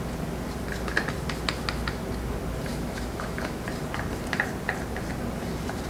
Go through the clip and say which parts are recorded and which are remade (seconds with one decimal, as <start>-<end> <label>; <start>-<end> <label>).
0.0-2.7 recorded; 2.7-3.6 remade; 3.6-5.9 recorded